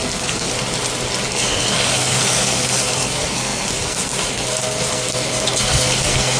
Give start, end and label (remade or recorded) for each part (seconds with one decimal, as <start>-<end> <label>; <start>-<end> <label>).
0.0-0.5 remade; 0.5-1.3 recorded; 1.3-6.4 remade